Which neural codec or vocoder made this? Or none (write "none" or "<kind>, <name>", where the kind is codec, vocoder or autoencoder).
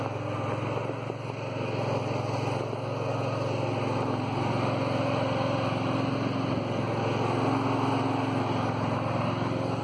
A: none